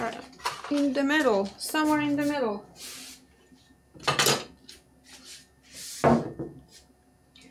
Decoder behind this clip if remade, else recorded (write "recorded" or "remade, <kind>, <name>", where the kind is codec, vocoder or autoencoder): recorded